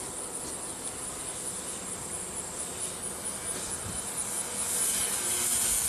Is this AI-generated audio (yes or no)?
no